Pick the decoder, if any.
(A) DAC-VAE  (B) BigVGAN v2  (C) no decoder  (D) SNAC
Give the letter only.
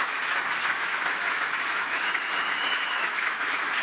A